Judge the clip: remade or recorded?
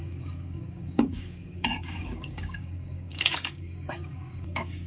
remade